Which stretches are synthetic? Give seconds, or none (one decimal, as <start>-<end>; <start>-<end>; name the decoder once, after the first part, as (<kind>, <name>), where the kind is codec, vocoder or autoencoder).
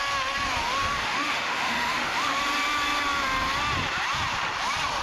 0.6-2.4 (autoencoder, DAC-VAE)